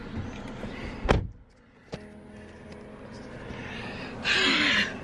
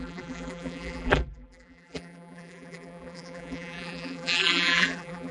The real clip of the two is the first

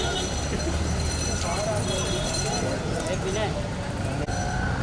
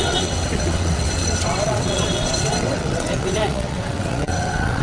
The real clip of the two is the first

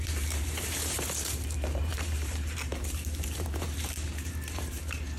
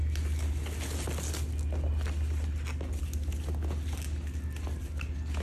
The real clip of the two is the second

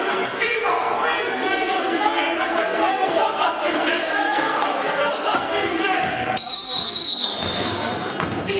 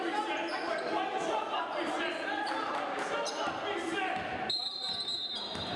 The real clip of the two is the second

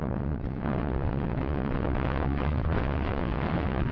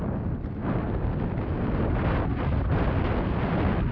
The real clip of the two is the second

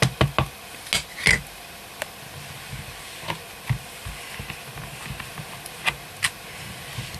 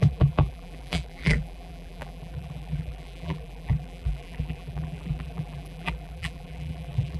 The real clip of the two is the first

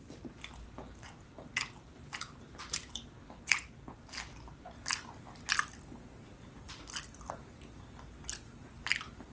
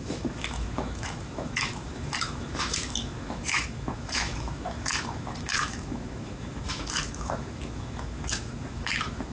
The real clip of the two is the first